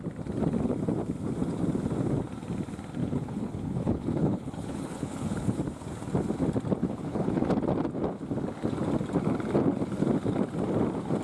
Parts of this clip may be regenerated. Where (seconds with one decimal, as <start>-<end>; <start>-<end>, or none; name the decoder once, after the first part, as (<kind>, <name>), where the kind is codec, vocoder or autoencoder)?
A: 3.0-5.6 (codec, HILCodec); 6.8-7.5

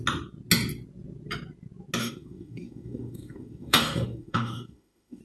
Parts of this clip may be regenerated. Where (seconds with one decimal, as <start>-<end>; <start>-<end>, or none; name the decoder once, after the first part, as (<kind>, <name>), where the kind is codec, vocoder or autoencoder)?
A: 2.0-5.2 (autoencoder, DAC-VAE)

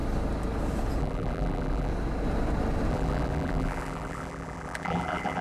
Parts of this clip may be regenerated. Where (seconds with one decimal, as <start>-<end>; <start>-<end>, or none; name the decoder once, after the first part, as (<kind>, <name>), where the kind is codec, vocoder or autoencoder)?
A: 1.0-1.9 (vocoder, BigVGAN v2); 2.9-5.4

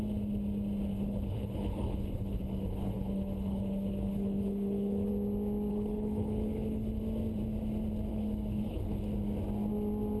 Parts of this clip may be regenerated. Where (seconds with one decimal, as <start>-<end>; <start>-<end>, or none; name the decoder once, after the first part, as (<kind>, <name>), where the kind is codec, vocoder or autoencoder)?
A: 0.9-5.1 (codec, HILCodec); 5.7-7.0; 8.1-9.0